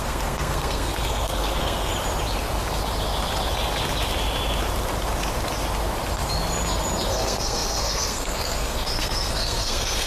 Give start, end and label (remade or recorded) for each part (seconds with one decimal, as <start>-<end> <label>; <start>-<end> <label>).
0.0-1.9 remade; 1.9-7.1 recorded; 7.1-10.1 remade